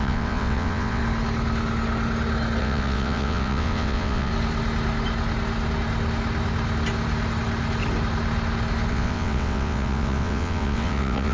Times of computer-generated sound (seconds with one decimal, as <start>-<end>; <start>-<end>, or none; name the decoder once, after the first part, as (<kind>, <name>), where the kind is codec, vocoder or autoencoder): 0.0-1.0 (vocoder, WaveNeXt); 2.6-4.3; 8.9-11.3